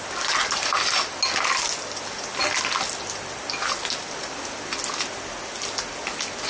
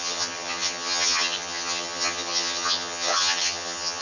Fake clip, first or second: second